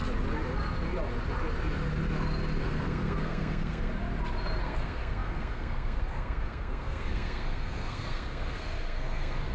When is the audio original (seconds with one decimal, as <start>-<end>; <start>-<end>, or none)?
0.0-2.6; 3.9-4.6